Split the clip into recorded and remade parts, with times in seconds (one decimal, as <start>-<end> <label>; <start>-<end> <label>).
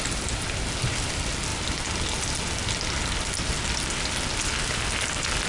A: 0.0-5.5 recorded